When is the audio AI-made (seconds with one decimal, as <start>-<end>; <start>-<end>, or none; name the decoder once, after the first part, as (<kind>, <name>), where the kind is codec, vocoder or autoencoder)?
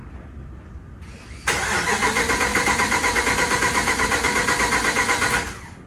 2.5-3.2 (vocoder, BigVGAN v2)